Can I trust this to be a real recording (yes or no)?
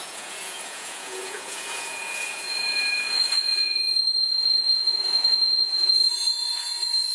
no